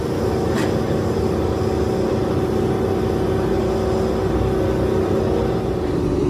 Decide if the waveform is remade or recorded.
recorded